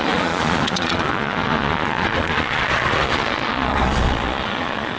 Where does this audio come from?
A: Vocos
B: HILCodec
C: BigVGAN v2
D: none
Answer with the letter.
A